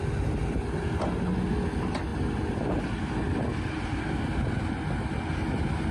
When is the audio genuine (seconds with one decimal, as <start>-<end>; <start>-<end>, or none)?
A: 0.0-5.9